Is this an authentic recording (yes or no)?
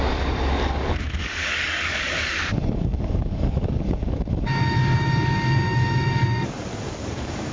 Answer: no